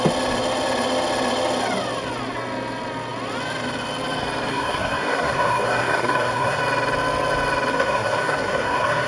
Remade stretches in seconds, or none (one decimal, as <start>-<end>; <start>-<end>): 4.5-6.6; 7.7-9.1